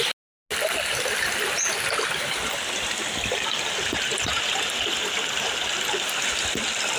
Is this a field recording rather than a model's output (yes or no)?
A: yes